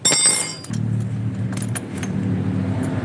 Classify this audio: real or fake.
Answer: real